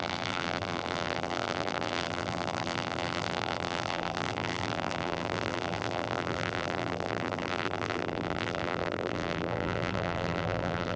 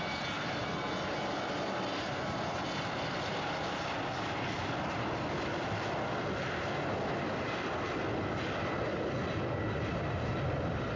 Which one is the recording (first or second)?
second